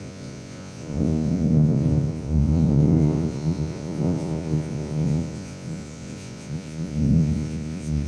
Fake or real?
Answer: fake